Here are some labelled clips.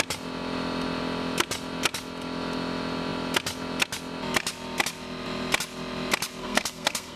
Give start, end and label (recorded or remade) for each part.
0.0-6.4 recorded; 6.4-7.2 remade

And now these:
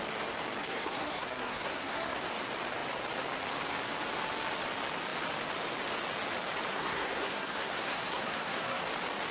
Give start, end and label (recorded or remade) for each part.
0.0-0.6 recorded; 0.6-2.2 remade; 2.2-6.7 recorded; 6.7-8.8 remade; 8.8-9.3 recorded

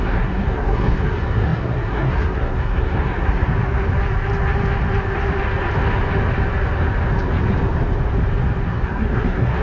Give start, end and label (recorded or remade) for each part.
0.0-3.5 remade; 3.5-8.7 recorded; 8.7-9.6 remade

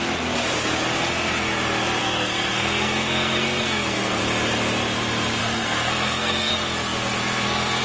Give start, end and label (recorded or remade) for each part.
0.0-2.0 recorded; 2.0-4.2 remade; 4.2-5.4 recorded; 5.4-6.5 remade; 6.5-7.8 recorded

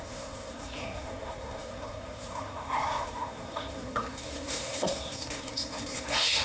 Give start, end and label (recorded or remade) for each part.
0.0-6.4 remade

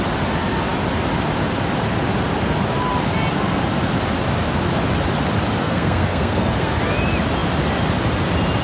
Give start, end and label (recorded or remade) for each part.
0.0-5.6 recorded; 5.6-6.8 remade; 6.8-8.6 recorded

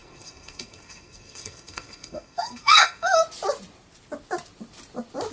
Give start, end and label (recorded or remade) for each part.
0.0-3.2 remade; 3.2-5.3 recorded